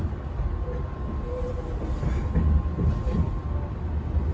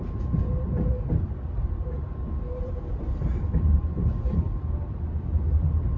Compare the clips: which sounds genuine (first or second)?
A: first